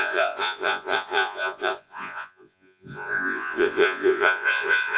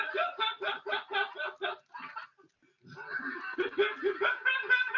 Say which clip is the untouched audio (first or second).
second